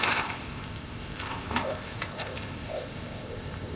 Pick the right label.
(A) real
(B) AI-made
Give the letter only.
B